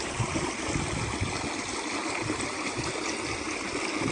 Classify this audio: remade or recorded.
recorded